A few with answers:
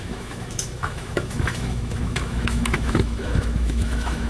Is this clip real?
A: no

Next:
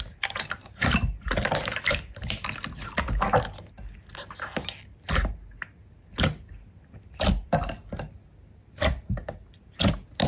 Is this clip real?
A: yes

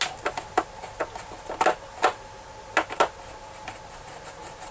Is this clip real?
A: yes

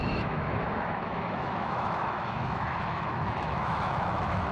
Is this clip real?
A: no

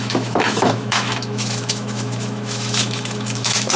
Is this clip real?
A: no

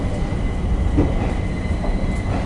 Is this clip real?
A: yes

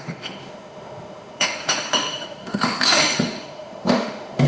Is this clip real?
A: no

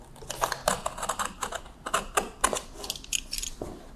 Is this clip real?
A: yes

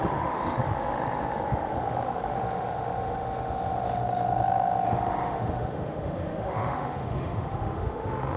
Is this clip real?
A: no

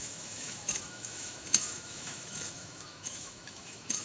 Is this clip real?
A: no